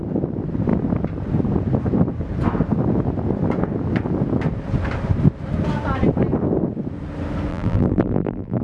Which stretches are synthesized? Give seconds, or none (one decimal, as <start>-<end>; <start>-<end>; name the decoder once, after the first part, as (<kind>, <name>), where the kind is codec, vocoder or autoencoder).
7.5-8.6 (vocoder, BigVGAN v2)